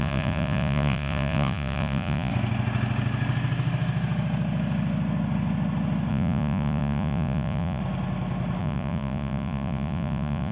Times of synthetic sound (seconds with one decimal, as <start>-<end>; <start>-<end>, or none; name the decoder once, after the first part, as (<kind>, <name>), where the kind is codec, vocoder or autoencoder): 0.0-2.3 (vocoder, Vocos); 6.1-7.8; 8.6-10.5